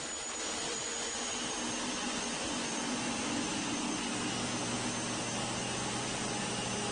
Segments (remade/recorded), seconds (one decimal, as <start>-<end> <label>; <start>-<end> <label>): 0.0-0.6 recorded; 0.6-1.4 remade; 1.4-2.0 recorded; 2.0-4.1 remade; 4.1-5.6 recorded; 5.6-6.4 remade; 6.4-6.9 recorded